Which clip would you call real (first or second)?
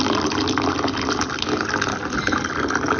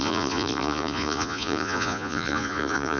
first